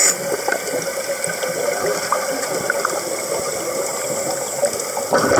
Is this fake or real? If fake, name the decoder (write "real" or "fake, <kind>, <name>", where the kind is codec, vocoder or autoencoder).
real